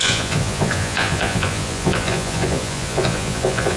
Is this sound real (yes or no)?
no